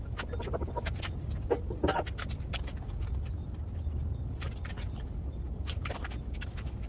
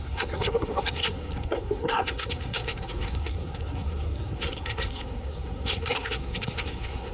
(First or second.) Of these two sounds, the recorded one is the first